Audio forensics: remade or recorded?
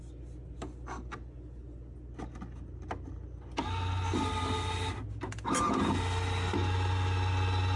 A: recorded